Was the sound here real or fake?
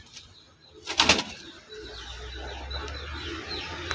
real